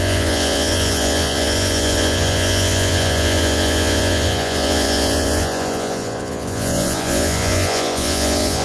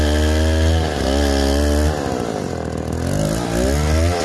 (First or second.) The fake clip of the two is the first